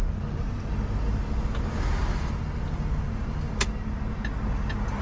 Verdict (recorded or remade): recorded